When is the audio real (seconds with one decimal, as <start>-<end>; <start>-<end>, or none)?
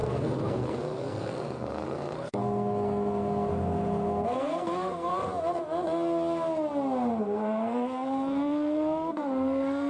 5.1-7.2